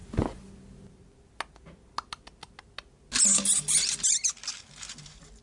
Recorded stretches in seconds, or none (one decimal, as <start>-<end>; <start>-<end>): 0.0-5.4